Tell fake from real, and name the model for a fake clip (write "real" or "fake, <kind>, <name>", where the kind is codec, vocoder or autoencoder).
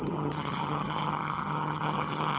fake, vocoder, HiFi-GAN